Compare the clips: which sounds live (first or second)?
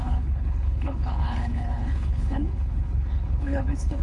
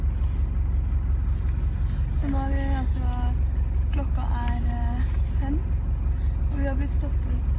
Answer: second